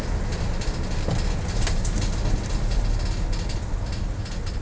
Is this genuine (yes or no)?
yes